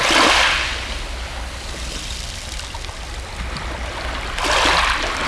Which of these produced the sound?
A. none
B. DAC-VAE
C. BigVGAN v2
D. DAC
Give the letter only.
A